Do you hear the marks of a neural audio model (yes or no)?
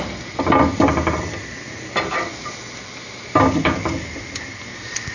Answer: no